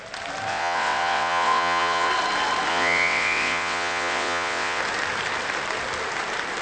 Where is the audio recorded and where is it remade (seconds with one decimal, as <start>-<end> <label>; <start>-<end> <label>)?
0.0-0.5 recorded; 0.5-2.1 remade; 2.1-2.7 recorded; 2.7-4.8 remade; 4.8-6.6 recorded